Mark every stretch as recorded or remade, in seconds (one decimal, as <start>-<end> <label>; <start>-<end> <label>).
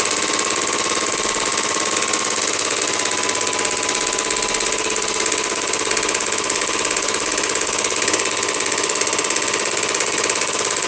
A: 0.0-10.9 recorded